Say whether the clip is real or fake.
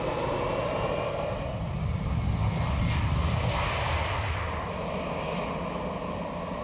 real